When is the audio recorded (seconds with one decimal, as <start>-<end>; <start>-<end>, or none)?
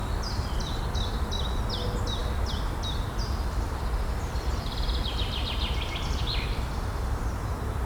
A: 0.7-2.2; 6.7-7.9